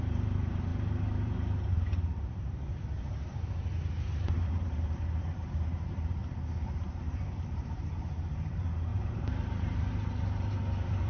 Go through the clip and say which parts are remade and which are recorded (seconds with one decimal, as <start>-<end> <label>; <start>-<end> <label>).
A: 0.0-6.2 remade; 6.2-7.3 recorded; 7.3-11.1 remade